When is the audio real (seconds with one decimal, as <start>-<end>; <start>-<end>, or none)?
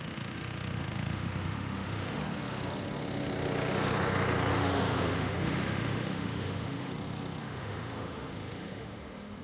2.2-4.5; 6.9-7.4